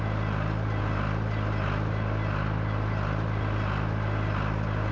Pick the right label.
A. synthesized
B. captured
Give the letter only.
B